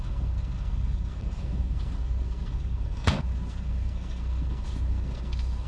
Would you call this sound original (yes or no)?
no